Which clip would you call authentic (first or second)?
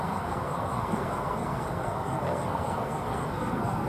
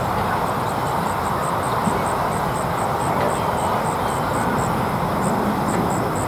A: second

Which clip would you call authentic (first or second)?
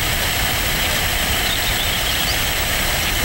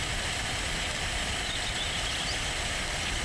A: second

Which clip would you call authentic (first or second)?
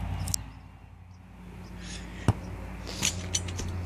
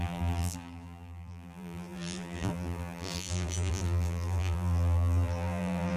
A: first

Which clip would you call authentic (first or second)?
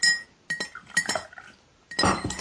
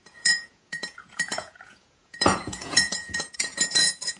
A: first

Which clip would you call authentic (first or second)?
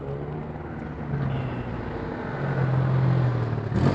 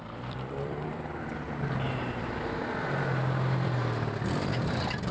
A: first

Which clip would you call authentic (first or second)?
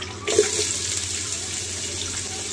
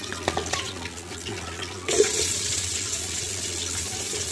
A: first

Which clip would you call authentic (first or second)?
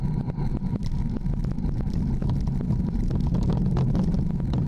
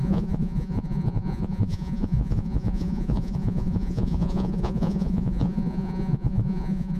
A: first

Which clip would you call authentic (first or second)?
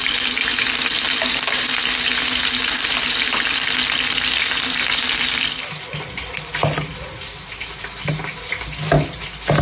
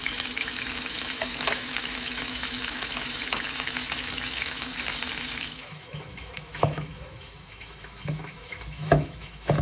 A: first